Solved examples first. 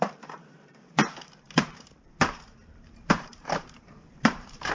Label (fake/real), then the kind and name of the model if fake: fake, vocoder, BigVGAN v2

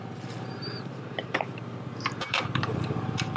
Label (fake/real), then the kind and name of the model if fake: fake, vocoder, BigVGAN v2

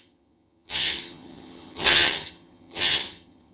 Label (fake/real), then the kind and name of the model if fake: fake, vocoder, HiFi-GAN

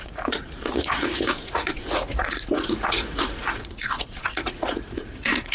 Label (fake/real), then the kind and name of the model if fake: fake, vocoder, Vocos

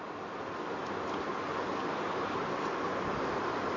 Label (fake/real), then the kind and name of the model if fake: real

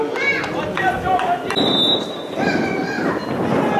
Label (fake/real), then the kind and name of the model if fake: real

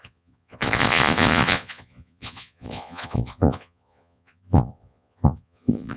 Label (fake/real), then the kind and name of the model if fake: fake, vocoder, Vocos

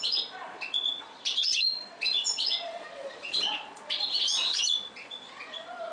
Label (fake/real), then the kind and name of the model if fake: fake, vocoder, Vocos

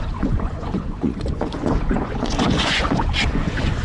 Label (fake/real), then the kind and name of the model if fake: fake, vocoder, Vocos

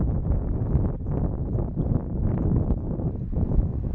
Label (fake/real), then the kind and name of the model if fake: fake, vocoder, BigVGAN v2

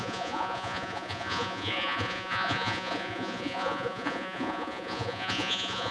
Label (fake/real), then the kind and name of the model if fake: fake, vocoder, Vocos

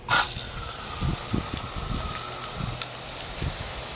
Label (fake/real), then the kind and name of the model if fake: real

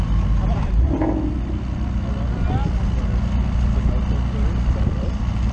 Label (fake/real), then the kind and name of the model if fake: real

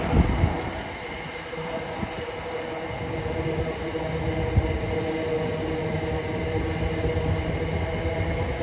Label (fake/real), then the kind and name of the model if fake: real